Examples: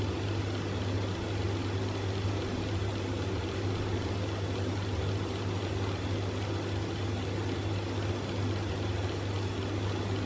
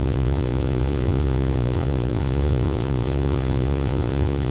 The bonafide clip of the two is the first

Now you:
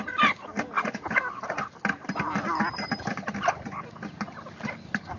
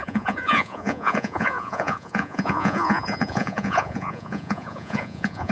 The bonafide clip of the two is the first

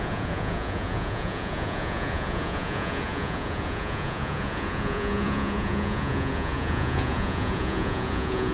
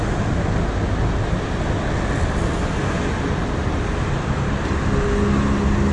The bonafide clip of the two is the second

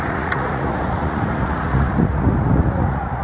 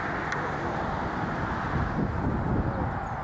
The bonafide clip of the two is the second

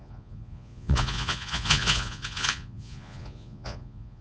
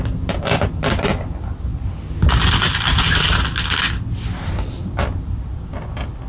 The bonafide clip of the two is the second